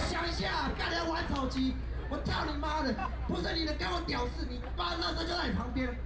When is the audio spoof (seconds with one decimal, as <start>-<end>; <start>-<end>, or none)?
none